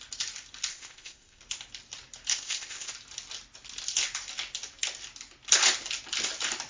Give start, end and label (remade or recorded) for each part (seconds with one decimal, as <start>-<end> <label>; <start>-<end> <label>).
0.0-0.7 recorded; 0.7-1.4 remade; 1.4-2.3 recorded; 2.3-2.9 remade; 2.9-6.7 recorded

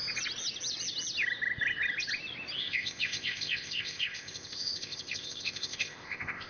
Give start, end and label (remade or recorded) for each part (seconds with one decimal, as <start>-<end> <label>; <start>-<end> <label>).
0.0-2.6 recorded; 2.6-6.5 remade

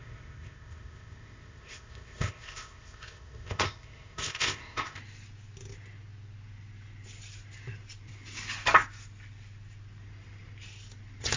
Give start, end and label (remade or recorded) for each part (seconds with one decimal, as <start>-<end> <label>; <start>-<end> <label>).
0.0-5.0 remade; 5.0-11.4 recorded

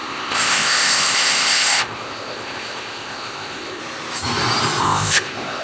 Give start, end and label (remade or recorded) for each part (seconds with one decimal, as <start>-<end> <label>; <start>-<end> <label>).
0.0-3.8 remade; 3.8-4.8 recorded; 4.8-5.6 remade

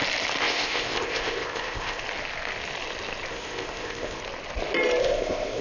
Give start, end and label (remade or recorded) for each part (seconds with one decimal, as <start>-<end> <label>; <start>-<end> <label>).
0.0-0.4 recorded; 0.4-2.0 remade; 2.0-3.3 recorded; 3.3-4.2 remade; 4.2-5.0 recorded; 5.0-5.6 remade

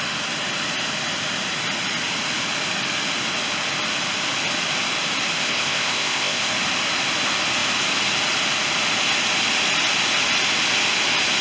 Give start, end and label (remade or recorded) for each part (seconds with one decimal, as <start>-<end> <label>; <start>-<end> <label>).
0.0-5.4 recorded; 5.4-6.5 remade; 6.5-11.4 recorded

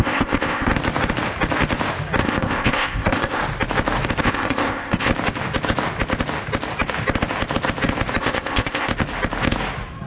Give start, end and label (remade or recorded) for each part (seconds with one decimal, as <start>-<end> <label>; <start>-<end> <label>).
0.0-0.7 remade; 0.7-2.2 recorded; 2.2-3.4 remade; 3.4-4.2 recorded; 4.2-5.1 remade; 5.1-8.2 recorded; 8.2-8.9 remade; 8.9-10.1 recorded

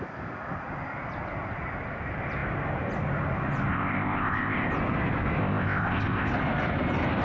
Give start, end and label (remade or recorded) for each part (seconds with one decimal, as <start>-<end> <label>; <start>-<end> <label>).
0.0-3.7 recorded; 3.7-4.7 remade; 4.7-5.4 recorded; 5.4-6.3 remade; 6.3-7.2 recorded